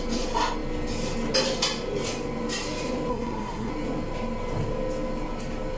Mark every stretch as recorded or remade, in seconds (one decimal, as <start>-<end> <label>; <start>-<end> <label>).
0.0-3.1 recorded; 3.1-3.7 remade; 3.7-5.8 recorded